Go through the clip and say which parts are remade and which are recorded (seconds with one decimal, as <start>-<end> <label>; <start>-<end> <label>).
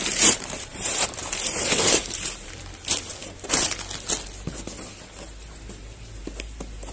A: 0.0-2.5 remade; 2.5-3.2 recorded; 3.2-3.8 remade; 3.8-6.9 recorded